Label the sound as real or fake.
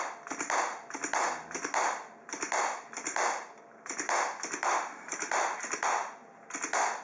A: real